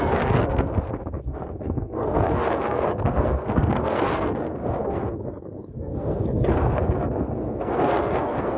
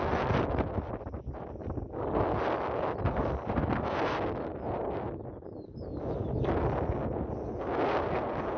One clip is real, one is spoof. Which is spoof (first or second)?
first